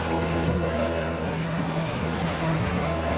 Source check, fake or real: fake